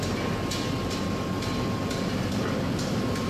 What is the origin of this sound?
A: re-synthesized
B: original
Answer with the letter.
B